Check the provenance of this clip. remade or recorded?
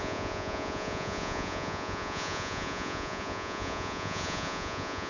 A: remade